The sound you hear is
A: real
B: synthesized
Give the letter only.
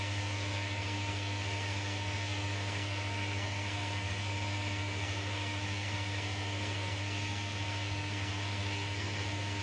B